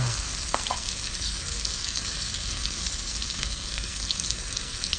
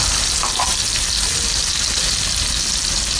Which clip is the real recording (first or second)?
second